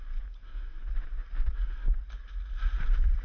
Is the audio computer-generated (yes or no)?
no